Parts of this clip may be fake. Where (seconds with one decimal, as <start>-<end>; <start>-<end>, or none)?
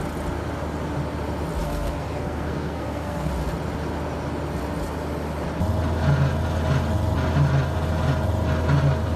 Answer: 1.6-3.3